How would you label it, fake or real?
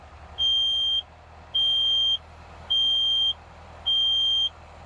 real